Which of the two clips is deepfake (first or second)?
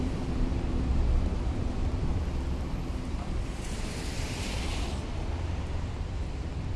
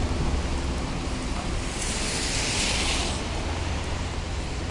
first